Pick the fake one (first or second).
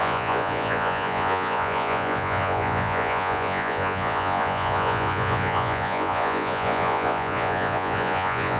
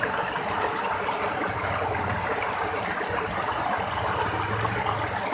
first